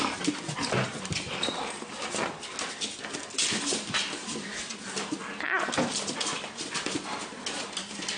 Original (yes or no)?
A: yes